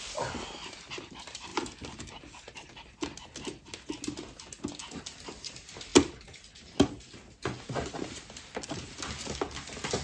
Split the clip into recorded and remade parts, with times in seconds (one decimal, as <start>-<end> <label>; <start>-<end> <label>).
0.0-10.0 recorded